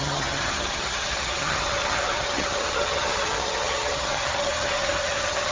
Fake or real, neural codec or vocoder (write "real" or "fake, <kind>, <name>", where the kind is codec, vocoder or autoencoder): fake, vocoder, HiFi-GAN